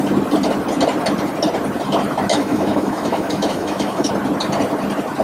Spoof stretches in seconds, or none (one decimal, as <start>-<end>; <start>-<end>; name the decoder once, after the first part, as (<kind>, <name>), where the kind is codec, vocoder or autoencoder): 2.3-4.1 (autoencoder, DAC-VAE)